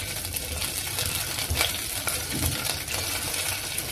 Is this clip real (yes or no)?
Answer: yes